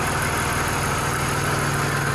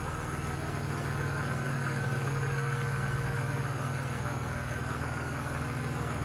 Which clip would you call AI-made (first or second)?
second